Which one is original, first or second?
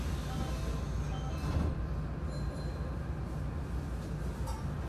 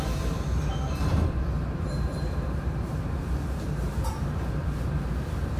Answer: first